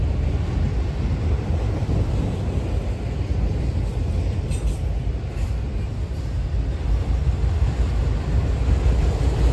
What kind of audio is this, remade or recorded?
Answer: recorded